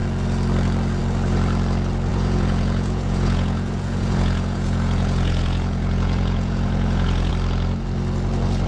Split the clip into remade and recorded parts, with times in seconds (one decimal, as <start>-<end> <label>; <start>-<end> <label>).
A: 0.0-2.1 recorded; 2.1-7.3 remade; 7.3-8.7 recorded

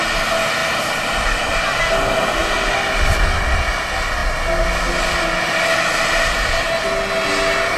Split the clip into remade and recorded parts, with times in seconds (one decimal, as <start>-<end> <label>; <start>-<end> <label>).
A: 0.0-0.6 recorded; 0.6-1.8 remade; 1.8-2.4 recorded; 2.4-3.2 remade; 3.2-7.8 recorded

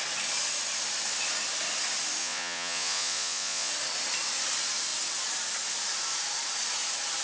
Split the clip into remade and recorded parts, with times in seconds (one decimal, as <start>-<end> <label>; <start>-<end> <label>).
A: 0.0-2.2 recorded; 2.2-3.7 remade; 3.7-7.2 recorded

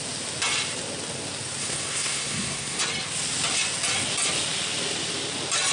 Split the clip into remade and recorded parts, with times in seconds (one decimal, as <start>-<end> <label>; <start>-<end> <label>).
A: 0.0-1.6 recorded; 1.6-2.8 remade; 2.8-5.7 recorded

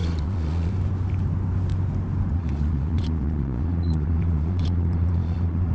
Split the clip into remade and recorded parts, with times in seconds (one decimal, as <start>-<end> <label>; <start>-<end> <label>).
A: 0.0-0.7 remade; 0.7-2.3 recorded; 2.3-5.7 remade